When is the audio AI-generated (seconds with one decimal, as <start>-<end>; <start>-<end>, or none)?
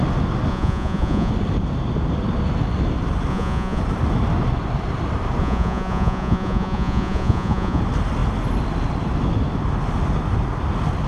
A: 0.5-1.3; 3.3-3.8; 5.4-7.8